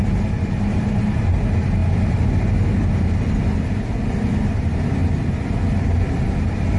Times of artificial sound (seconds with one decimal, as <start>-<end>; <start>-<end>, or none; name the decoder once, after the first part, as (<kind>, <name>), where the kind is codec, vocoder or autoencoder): 0.0-1.8 (vocoder, BigVGAN v2); 4.6-5.0; 5.9-6.8